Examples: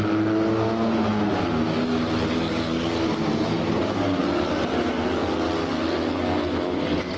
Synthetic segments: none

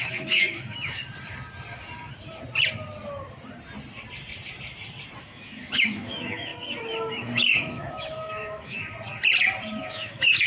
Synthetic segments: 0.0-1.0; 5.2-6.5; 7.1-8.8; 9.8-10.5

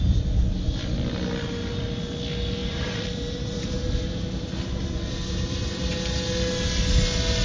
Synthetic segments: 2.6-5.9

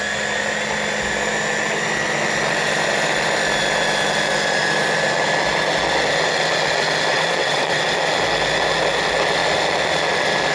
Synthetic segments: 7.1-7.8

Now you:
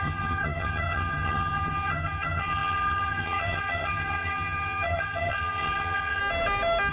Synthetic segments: 0.0-6.2